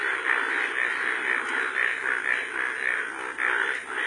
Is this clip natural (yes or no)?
yes